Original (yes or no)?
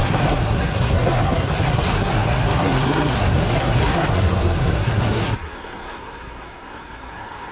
no